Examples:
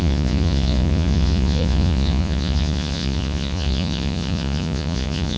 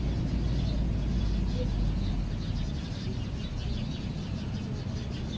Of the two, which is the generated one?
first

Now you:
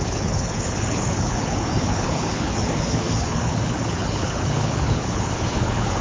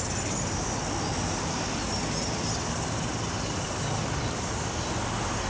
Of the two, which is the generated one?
first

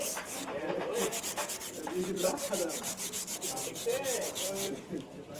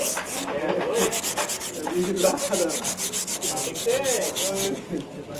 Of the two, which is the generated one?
first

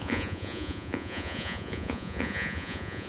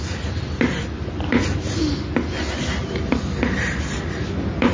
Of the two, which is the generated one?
first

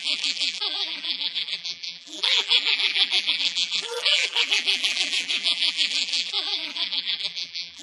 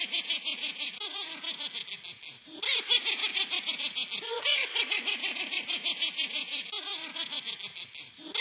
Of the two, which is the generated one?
first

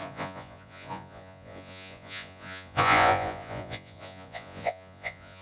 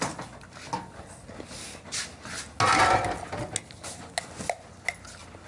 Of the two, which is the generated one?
first